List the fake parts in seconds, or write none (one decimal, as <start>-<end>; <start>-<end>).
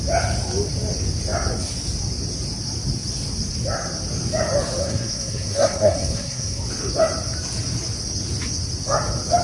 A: 4.8-6.6